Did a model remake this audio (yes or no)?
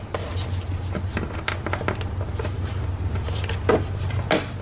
no